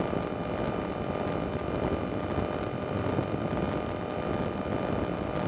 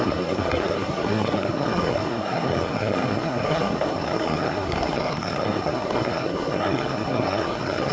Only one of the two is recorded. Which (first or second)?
first